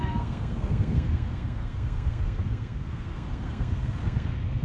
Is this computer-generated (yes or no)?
yes